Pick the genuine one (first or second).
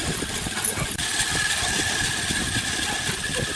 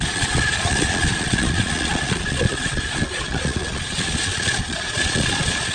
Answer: first